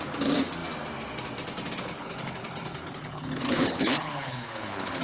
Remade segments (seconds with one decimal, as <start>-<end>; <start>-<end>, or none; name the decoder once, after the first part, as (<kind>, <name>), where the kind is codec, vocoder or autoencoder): 1.8-5.0 (codec, HILCodec)